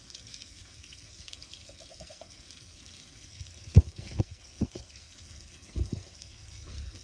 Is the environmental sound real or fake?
fake